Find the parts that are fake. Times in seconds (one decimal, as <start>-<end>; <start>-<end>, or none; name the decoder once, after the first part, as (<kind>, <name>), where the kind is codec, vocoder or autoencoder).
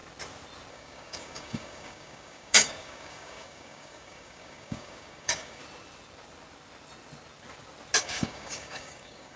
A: 0.7-5.6 (codec, DAC); 8.0-9.4